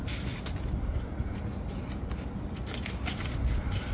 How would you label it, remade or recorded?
recorded